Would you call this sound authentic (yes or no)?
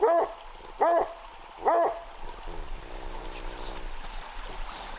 yes